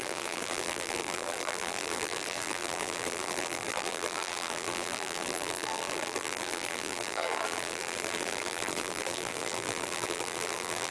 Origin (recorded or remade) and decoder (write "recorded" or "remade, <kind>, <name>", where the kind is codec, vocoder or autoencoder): remade, vocoder, BigVGAN v2